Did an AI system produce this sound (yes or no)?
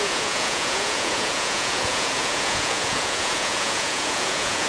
yes